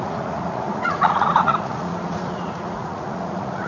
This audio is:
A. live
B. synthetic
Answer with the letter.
B